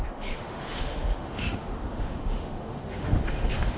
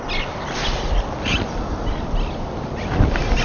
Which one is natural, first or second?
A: second